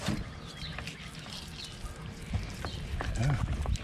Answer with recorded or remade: recorded